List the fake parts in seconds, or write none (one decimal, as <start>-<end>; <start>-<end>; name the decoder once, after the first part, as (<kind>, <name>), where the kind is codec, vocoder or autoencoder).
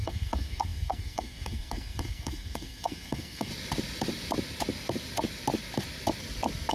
0.0-3.5 (codec, SNAC)